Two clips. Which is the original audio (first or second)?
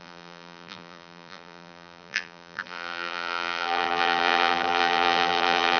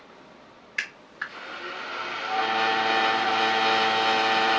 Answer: second